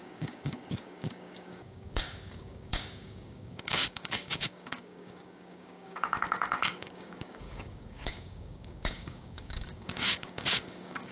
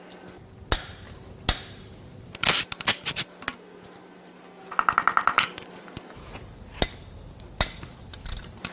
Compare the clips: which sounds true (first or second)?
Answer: second